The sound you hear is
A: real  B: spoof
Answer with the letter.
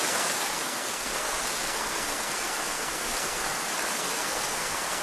B